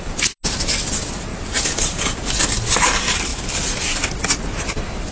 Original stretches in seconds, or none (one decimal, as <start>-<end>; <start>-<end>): 0.0-1.3; 2.1-5.1